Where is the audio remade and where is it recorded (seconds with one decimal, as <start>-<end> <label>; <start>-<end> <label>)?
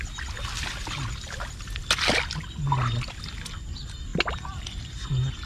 0.0-5.5 recorded